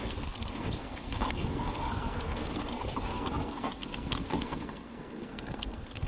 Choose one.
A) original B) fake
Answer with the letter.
B